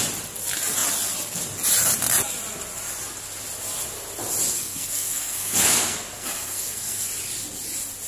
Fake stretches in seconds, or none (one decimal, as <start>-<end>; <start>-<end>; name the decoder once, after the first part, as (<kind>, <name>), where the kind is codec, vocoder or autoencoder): 4.5-7.1 (codec, SNAC)